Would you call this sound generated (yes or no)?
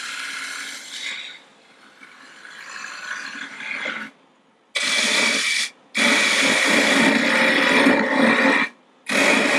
no